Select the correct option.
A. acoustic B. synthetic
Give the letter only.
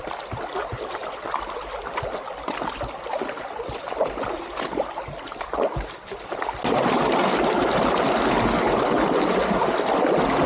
A